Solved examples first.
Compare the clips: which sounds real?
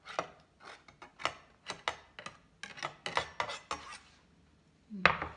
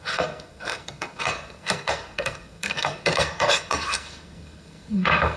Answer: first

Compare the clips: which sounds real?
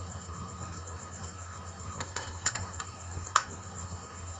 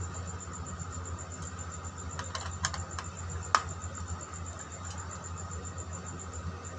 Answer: second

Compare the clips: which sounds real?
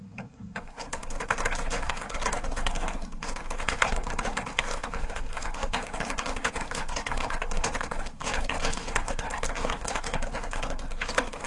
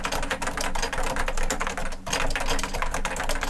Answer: second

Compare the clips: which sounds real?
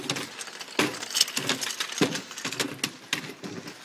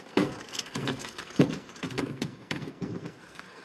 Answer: first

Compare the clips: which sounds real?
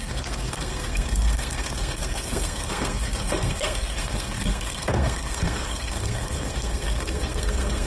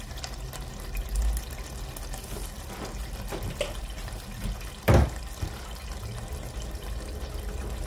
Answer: second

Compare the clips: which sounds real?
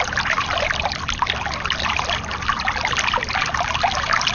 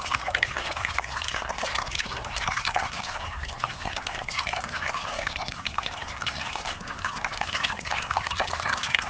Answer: first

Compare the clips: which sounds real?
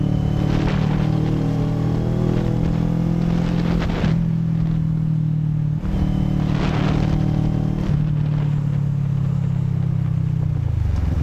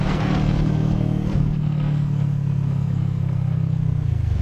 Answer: first